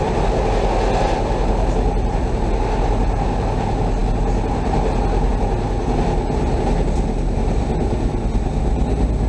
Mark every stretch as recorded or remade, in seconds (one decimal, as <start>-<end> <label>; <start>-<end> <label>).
0.0-9.3 recorded